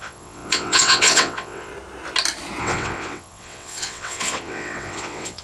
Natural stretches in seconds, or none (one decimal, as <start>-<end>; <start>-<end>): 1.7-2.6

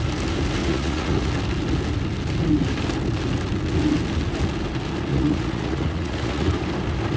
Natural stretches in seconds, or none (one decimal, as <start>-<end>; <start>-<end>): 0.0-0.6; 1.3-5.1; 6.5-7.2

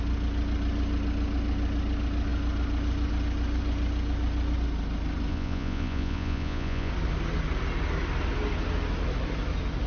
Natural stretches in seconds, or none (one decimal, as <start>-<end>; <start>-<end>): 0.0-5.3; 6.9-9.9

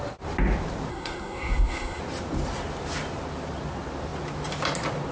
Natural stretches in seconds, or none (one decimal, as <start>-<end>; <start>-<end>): 0.0-0.9; 2.0-5.1